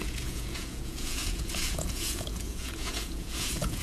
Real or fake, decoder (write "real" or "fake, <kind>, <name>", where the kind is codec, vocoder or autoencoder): fake, vocoder, Vocos